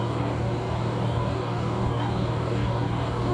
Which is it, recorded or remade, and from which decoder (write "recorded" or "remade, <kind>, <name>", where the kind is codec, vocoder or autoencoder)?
remade, codec, DAC